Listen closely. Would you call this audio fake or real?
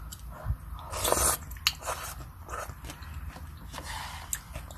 real